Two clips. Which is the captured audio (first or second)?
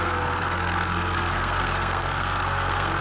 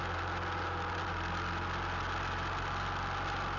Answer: second